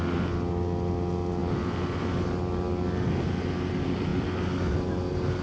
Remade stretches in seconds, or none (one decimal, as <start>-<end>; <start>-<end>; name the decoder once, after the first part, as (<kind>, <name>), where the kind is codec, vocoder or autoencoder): none